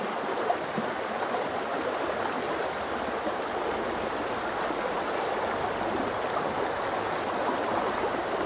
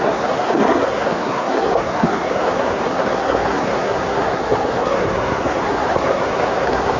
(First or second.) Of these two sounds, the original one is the first